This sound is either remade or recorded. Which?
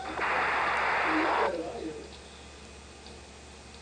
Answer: recorded